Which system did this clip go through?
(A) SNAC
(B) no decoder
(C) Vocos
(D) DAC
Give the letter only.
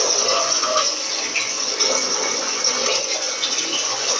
C